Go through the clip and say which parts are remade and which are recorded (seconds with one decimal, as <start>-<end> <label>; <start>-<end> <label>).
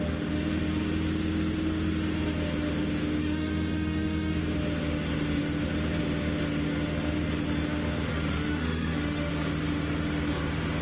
0.0-3.2 recorded; 3.2-4.4 remade; 4.4-8.1 recorded; 8.1-9.3 remade; 9.3-10.8 recorded